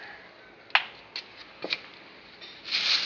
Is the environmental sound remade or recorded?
recorded